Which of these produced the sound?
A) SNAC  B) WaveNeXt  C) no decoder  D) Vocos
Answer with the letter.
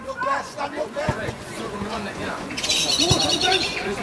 D